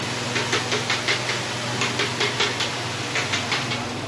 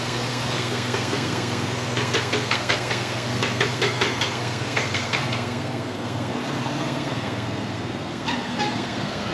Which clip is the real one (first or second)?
first